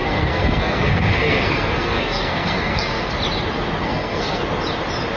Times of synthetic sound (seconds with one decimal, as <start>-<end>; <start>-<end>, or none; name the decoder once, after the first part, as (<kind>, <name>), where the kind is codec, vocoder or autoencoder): 0.0-3.1 (codec, SNAC); 3.8-4.4